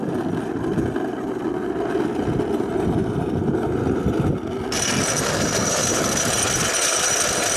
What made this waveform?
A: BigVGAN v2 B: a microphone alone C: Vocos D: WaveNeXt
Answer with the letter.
B